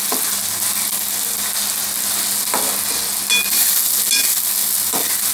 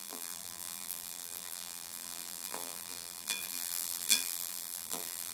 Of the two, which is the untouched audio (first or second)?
first